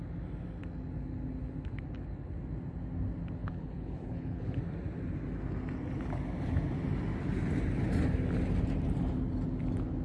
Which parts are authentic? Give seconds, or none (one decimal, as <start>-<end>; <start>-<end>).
0.0-3.4; 4.6-10.0